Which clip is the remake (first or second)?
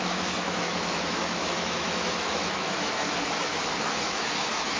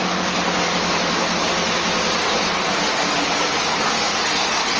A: first